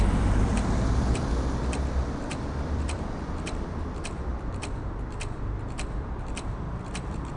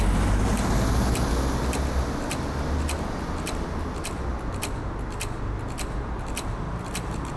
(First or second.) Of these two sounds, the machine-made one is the first